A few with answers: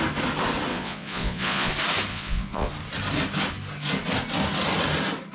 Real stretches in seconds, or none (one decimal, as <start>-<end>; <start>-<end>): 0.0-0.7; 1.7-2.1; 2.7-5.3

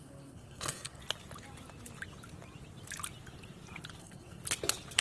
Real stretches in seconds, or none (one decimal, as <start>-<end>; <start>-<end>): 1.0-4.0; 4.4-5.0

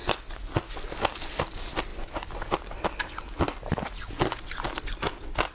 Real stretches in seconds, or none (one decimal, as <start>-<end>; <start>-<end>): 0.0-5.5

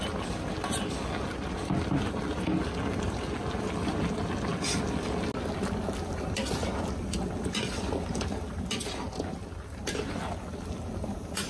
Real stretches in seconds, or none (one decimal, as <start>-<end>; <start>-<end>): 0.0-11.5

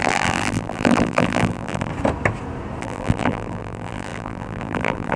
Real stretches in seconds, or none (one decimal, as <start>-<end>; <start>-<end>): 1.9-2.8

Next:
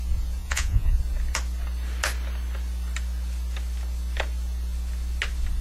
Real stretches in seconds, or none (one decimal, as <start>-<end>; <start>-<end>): 0.0-0.4; 1.0-5.6

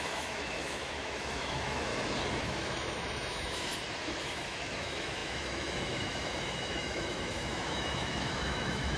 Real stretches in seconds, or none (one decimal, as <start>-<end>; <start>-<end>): 1.9-2.4; 3.7-4.2